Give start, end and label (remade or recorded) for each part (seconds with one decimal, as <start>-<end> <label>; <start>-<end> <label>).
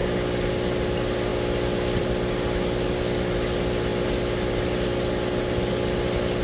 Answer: 0.0-6.4 recorded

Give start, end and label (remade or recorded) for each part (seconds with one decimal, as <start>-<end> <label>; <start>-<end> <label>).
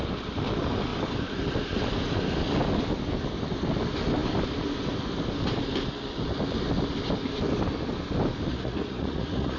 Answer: 0.0-8.5 recorded; 8.5-9.6 remade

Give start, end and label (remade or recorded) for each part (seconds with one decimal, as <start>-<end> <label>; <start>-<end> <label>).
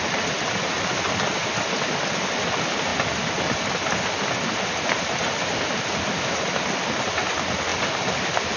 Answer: 0.0-2.9 recorded; 2.9-3.6 remade; 3.6-8.6 recorded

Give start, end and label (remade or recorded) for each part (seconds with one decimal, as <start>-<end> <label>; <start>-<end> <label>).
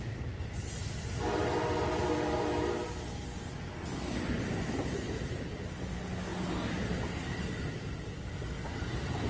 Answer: 0.0-9.3 recorded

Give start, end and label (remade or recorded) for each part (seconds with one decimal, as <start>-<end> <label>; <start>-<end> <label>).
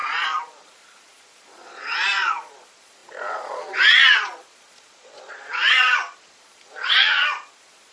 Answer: 0.0-7.9 remade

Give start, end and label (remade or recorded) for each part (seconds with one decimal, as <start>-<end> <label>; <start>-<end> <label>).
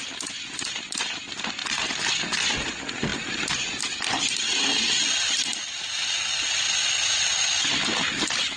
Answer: 0.0-8.6 recorded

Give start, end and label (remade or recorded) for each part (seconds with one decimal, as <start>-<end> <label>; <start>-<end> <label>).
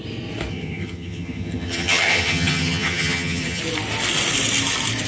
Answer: 0.0-0.5 recorded; 0.5-3.6 remade; 3.6-5.1 recorded